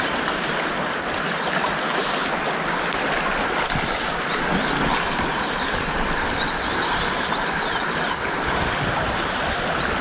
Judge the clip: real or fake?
real